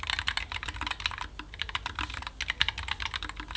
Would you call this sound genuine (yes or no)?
yes